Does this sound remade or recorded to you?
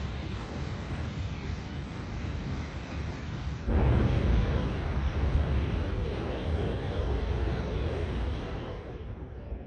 remade